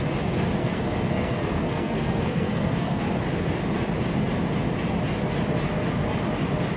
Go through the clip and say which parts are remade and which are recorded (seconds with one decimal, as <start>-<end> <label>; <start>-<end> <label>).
0.0-0.6 recorded; 0.6-3.0 remade; 3.0-6.8 recorded